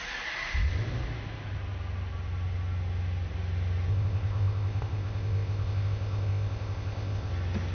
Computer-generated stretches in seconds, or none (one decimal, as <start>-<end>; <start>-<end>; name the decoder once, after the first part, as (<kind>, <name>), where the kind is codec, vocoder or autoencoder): 3.9-7.3 (codec, ZipCodec)

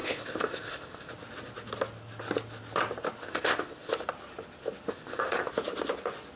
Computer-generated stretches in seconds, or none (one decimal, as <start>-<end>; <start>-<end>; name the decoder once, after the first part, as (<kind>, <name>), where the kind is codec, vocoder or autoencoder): 0.0-1.1 (codec, ZipCodec); 3.2-3.9; 4.9-5.5